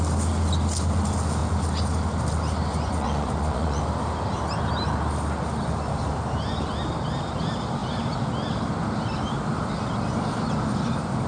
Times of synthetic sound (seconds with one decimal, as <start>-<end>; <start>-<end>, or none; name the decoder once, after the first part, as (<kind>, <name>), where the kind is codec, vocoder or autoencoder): 2.7-3.8 (vocoder, Vocos)